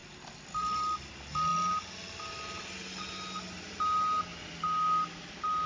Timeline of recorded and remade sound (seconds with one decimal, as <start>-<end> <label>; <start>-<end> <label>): 0.0-1.1 remade; 1.1-5.7 recorded